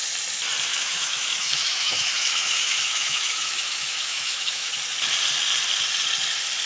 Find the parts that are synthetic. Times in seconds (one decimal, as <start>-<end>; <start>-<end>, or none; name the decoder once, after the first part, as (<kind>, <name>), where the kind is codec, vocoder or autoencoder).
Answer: 0.7-4.7 (autoencoder, DAC-VAE)